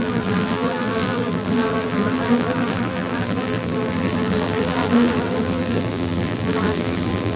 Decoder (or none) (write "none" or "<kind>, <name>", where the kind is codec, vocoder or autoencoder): vocoder, BigVGAN v2